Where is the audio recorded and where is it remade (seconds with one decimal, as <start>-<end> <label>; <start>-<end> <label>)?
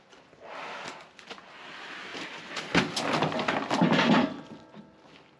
0.0-5.4 recorded